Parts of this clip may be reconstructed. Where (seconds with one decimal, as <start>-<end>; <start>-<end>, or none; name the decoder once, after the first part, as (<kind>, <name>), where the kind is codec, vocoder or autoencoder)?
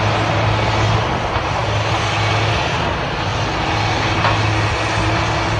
none